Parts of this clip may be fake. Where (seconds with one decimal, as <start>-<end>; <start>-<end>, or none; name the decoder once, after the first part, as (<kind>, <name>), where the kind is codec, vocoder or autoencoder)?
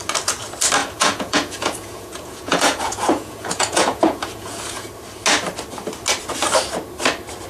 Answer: 0.8-4.9 (vocoder, Vocos)